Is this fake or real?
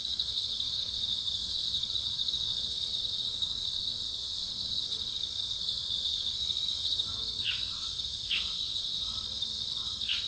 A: fake